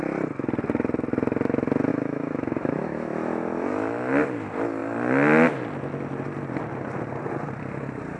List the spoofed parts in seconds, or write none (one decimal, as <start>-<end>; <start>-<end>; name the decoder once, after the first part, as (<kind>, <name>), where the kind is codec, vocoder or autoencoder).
1.9-4.1 (autoencoder, DAC-VAE)